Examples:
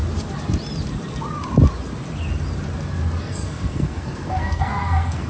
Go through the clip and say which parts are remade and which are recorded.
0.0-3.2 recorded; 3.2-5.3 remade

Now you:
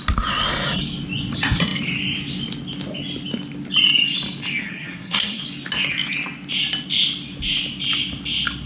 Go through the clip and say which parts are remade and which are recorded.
0.0-4.6 recorded; 4.6-5.4 remade; 5.4-8.7 recorded